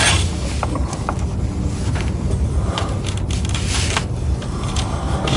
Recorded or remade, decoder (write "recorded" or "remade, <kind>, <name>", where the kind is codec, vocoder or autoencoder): recorded